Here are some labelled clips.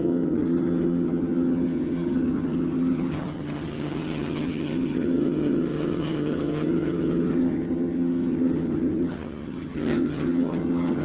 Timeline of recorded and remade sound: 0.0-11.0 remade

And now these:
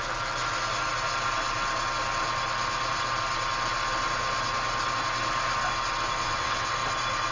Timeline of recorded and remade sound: 0.0-6.2 recorded; 6.2-6.7 remade; 6.7-7.3 recorded

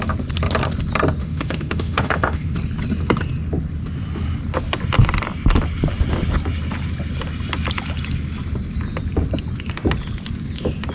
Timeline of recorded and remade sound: 0.0-1.2 recorded; 1.2-2.5 remade; 2.5-10.9 recorded

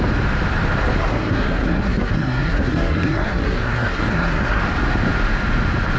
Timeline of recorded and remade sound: 0.0-1.0 recorded; 1.0-4.6 remade; 4.6-6.0 recorded

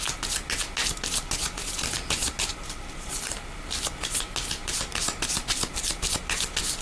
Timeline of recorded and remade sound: 0.0-2.5 recorded; 2.5-3.6 remade; 3.6-4.6 recorded; 4.6-6.1 remade; 6.1-6.8 recorded

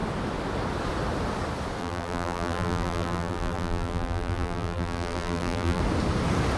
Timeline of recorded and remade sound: 0.0-1.8 recorded; 1.8-5.8 remade; 5.8-6.6 recorded